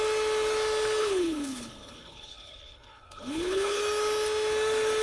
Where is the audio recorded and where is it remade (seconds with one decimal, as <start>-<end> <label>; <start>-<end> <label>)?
0.0-1.0 recorded; 1.0-3.8 remade; 3.8-5.0 recorded